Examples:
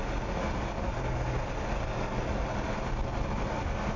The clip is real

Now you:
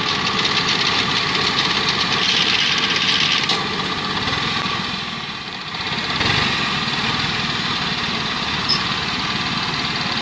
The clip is real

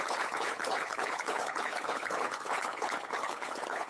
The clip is fake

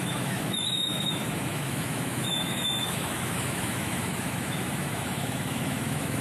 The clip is fake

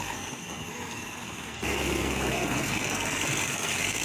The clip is fake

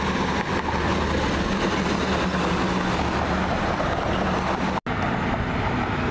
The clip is real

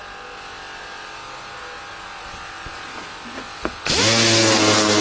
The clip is real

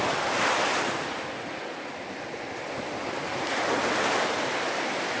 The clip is real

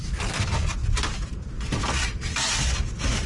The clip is real